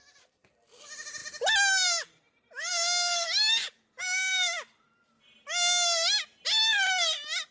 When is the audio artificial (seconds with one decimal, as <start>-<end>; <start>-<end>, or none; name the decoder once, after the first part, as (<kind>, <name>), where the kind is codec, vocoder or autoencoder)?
none